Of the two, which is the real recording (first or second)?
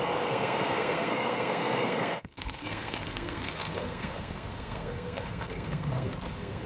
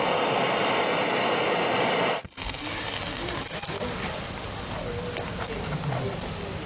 second